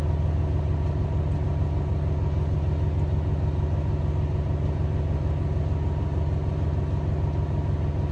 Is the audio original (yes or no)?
yes